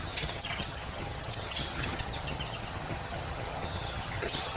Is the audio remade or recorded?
remade